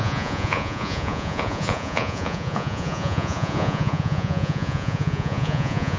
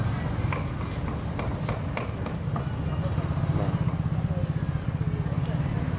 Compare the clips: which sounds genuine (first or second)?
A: second